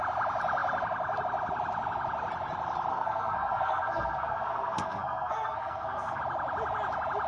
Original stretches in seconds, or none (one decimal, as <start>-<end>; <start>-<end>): 0.0-2.9; 6.2-7.3